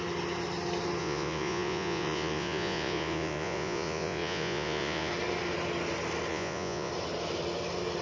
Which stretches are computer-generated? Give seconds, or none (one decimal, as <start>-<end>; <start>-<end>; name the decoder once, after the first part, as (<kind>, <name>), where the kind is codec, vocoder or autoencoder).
1.0-5.1 (vocoder, Vocos); 6.3-6.9